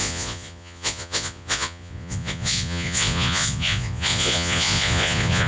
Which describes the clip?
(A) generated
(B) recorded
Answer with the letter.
A